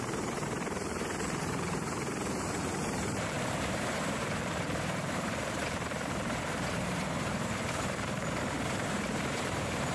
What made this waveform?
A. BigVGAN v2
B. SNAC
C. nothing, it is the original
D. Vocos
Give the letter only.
A